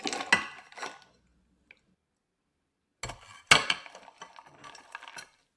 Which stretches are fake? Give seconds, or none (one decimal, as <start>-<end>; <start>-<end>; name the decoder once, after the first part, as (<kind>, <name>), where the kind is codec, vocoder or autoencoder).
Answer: none

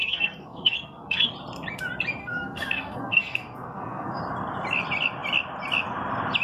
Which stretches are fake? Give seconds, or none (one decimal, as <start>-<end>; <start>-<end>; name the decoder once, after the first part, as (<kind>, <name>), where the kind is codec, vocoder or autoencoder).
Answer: 0.0-1.3 (codec, SNAC); 2.2-4.2

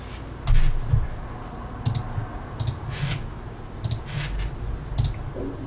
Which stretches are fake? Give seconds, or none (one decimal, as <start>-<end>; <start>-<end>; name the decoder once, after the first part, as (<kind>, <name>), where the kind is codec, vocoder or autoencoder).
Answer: none

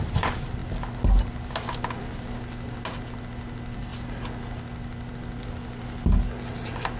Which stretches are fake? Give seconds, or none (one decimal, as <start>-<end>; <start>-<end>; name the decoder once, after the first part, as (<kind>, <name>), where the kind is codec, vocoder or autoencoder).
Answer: none

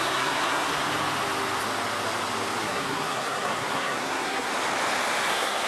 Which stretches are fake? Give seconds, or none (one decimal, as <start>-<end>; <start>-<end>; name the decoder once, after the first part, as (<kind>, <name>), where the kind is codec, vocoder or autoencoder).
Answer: 0.0-0.7 (codec, SNAC); 2.6-4.5; 5.3-5.7

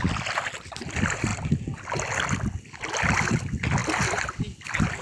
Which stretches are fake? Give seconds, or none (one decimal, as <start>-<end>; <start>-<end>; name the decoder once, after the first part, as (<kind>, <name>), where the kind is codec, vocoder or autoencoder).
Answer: none